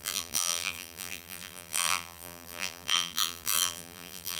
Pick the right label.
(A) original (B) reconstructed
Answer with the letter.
B